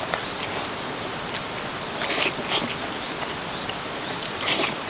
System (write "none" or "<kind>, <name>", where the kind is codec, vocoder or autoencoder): vocoder, BigVGAN v2